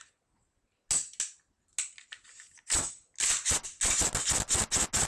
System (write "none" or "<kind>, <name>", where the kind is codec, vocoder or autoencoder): none